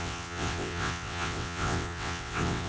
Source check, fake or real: fake